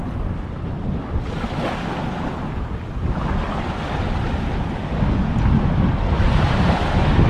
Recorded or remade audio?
recorded